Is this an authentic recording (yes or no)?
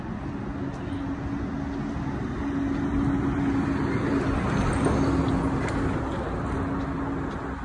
yes